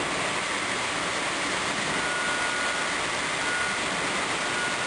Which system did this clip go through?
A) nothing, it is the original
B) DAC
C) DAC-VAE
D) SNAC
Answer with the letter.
A